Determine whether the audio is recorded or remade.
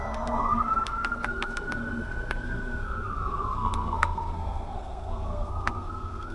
remade